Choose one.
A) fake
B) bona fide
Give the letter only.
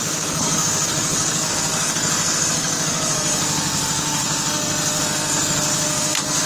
A